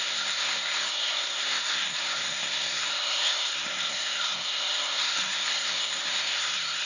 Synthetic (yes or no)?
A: yes